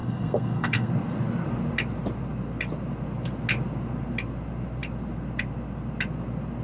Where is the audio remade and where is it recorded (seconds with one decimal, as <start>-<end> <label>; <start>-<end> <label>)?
0.0-0.9 remade; 0.9-6.6 recorded